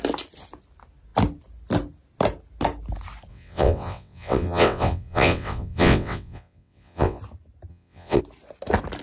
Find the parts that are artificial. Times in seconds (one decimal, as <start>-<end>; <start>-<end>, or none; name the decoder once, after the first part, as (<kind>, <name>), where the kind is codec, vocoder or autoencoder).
3.3-7.2 (vocoder, WaveNeXt); 7.7-8.2